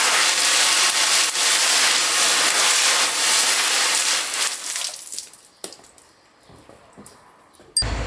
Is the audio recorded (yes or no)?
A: yes